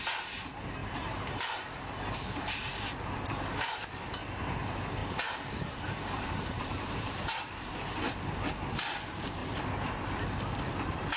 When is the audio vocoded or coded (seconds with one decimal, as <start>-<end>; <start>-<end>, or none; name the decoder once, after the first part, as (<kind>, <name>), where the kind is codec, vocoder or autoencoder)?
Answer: 0.8-3.9 (vocoder, BigVGAN v2); 5.0-7.4